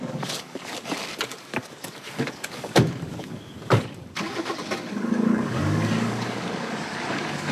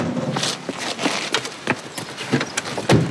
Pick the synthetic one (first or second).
first